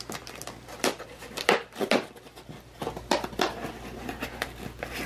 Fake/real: real